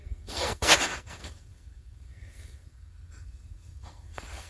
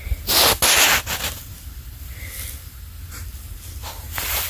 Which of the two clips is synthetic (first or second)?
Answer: first